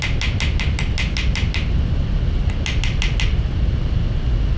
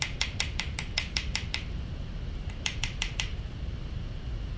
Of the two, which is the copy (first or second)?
second